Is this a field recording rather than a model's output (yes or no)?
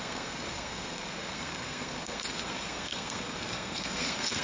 no